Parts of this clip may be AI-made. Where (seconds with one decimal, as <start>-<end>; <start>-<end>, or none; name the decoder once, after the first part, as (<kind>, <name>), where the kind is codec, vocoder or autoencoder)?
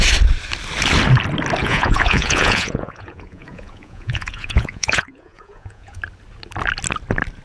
1.6-6.0 (vocoder, Vocos)